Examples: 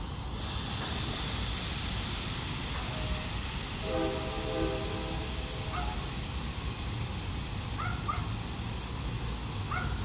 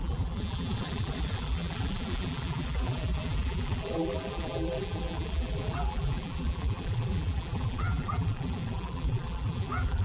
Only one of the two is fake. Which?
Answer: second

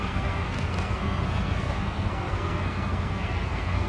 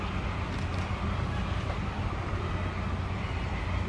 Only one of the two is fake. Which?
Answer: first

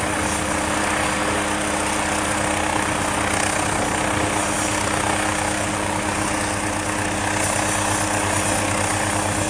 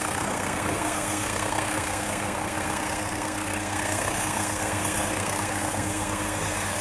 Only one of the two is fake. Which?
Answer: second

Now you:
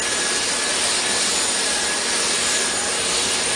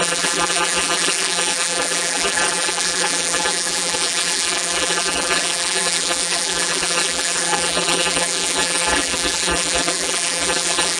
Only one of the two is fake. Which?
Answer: second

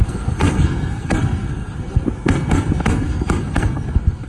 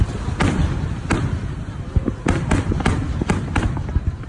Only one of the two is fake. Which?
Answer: first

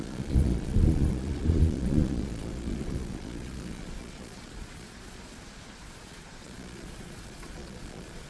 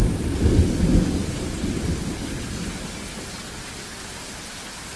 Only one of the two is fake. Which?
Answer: first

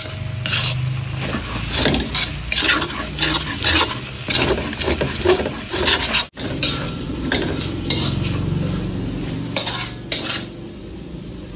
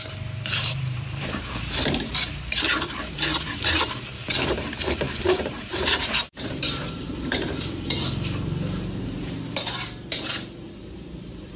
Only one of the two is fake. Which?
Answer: second